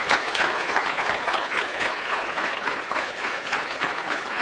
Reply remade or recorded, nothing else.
remade